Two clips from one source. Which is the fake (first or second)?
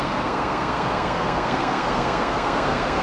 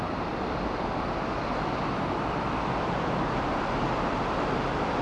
first